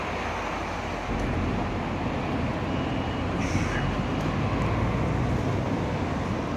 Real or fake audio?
real